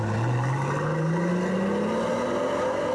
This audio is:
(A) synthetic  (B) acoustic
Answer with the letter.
B